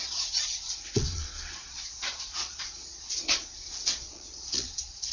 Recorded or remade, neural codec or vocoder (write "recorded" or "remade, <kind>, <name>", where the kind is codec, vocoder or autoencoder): remade, vocoder, Vocos